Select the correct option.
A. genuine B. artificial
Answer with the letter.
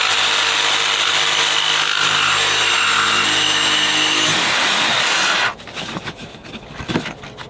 A